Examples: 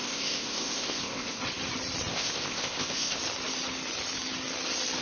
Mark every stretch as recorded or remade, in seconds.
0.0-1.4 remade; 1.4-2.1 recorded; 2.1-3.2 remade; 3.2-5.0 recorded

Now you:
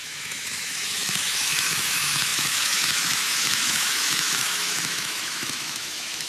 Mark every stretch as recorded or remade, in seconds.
0.0-6.3 remade

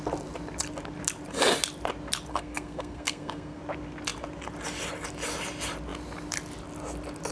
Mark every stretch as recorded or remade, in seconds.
0.0-2.3 recorded; 2.3-3.6 remade; 3.6-7.3 recorded

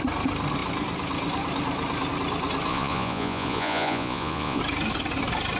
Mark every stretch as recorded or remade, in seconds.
0.0-2.7 recorded; 2.7-4.6 remade; 4.6-5.6 recorded

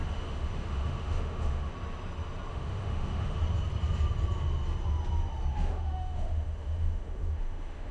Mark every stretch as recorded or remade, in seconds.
0.0-1.7 remade; 1.7-2.5 recorded; 2.5-3.4 remade; 3.4-5.5 recorded; 5.5-7.9 remade

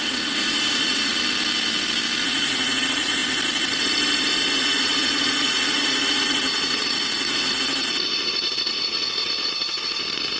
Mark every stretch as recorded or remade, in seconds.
0.0-1.1 remade; 1.1-2.2 recorded; 2.2-3.2 remade; 3.2-4.6 recorded; 4.6-10.4 remade

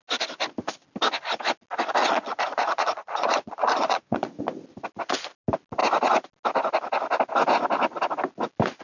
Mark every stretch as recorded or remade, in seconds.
0.0-2.0 recorded; 2.0-4.4 remade; 4.4-8.8 recorded